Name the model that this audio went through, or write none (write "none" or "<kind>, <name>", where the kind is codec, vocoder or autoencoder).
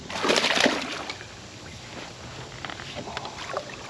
vocoder, BigVGAN v2